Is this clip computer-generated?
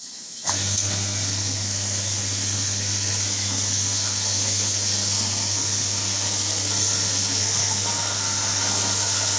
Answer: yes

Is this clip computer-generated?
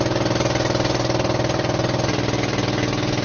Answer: no